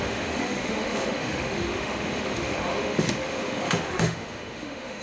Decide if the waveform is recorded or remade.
remade